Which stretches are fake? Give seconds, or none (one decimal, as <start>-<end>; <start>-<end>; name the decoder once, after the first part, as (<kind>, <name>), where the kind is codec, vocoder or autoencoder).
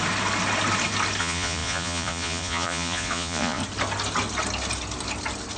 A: 1.2-3.6 (vocoder, Vocos)